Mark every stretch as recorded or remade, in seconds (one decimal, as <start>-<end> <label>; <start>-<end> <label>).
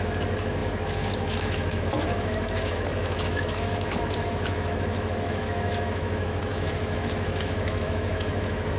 0.0-8.8 remade